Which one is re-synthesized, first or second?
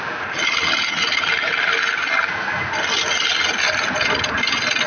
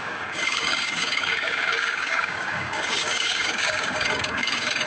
second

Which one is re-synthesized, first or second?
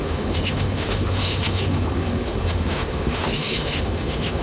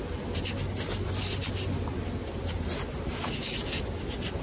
first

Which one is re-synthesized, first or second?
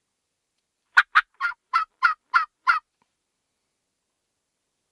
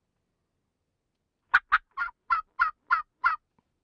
first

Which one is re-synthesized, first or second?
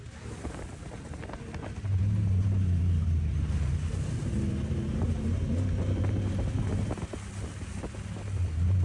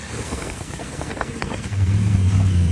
second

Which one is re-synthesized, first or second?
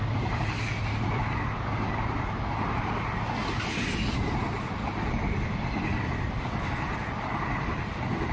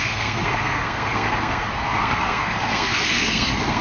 second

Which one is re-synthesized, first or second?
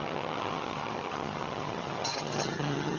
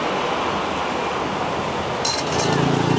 first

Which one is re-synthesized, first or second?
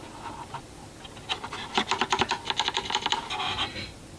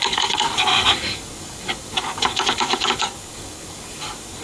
second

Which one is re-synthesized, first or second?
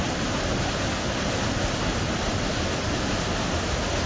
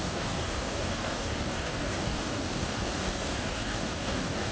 second